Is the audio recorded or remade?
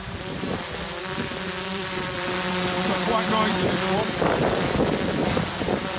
remade